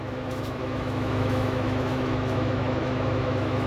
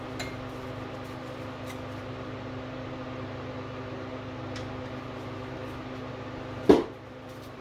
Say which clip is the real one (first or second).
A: second